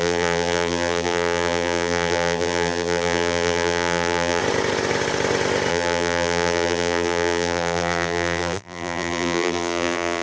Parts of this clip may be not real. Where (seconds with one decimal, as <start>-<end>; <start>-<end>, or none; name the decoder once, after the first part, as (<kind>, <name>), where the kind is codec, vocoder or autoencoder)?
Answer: 0.0-4.4 (vocoder, BigVGAN v2); 5.7-10.2